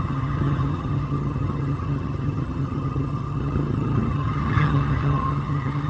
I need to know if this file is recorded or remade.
remade